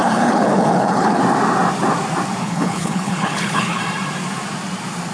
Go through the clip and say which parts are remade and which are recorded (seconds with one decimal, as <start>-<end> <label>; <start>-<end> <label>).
0.0-1.2 remade; 1.2-2.4 recorded; 2.4-3.8 remade; 3.8-5.1 recorded